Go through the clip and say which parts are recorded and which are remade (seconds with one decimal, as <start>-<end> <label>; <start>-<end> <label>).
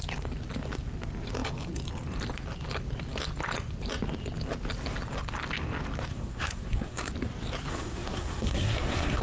0.0-6.1 recorded; 6.1-7.1 remade; 7.1-7.7 recorded; 7.7-9.2 remade